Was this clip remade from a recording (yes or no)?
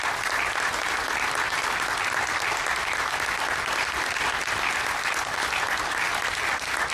no